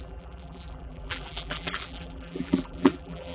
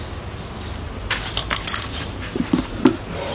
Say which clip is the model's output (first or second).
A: first